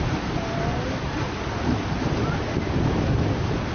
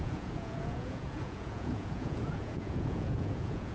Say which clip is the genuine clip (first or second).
first